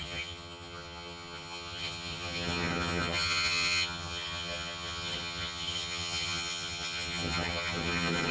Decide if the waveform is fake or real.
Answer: fake